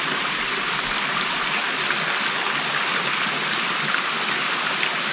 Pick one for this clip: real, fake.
real